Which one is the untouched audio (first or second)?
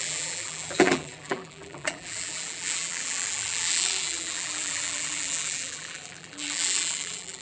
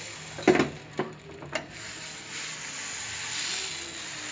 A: second